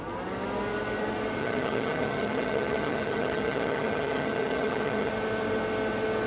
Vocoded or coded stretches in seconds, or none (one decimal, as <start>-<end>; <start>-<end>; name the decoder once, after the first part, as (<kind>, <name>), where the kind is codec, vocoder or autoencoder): 1.4-5.1 (vocoder, HiFi-GAN)